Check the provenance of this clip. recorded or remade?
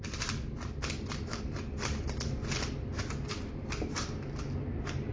recorded